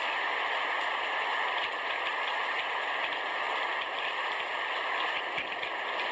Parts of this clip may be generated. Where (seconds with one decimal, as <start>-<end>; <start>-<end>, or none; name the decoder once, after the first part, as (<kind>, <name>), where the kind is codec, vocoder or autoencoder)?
none